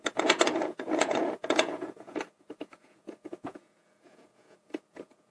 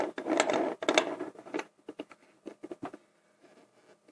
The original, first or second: second